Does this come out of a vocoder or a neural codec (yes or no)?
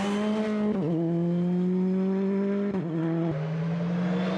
no